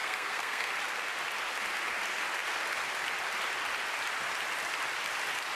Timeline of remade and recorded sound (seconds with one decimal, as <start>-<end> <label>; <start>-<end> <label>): 0.0-0.7 remade; 0.7-5.5 recorded